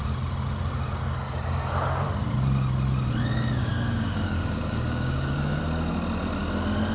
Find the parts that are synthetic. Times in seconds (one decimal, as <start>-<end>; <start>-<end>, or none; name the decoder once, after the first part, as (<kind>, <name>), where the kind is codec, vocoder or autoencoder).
3.6-5.6 (codec, DAC)